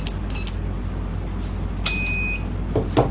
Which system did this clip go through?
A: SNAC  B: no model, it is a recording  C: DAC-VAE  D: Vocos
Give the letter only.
B